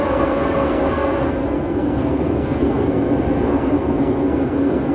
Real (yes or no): no